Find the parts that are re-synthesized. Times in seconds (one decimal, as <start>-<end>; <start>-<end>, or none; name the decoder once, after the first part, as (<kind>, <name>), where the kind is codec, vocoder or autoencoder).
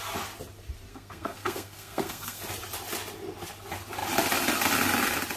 0.9-2.4 (codec, SNAC)